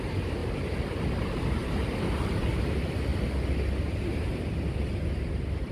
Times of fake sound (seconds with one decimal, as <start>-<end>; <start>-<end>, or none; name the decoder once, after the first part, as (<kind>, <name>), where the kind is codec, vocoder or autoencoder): 0.0-0.4 (vocoder, BigVGAN v2); 1.2-3.1; 3.8-4.3